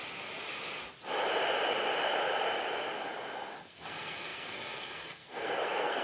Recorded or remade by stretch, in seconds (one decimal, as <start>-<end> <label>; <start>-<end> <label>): 0.0-3.6 recorded; 3.6-6.0 remade